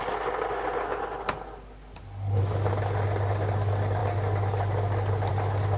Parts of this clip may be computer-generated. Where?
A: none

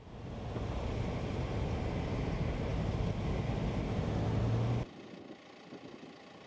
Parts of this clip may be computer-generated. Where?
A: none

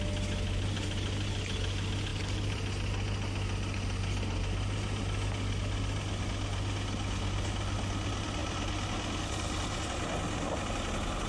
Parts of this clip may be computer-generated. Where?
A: none

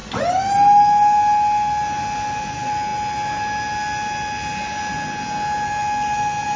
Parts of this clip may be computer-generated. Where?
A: none

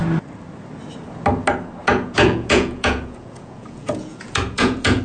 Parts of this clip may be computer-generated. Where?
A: 1.8-5.0 (vocoder, Vocos)